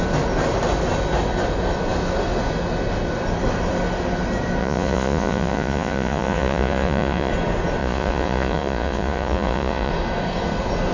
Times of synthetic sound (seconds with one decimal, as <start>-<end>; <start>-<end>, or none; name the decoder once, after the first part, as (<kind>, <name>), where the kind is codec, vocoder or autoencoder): 4.6-7.3 (vocoder, Vocos); 7.8-9.9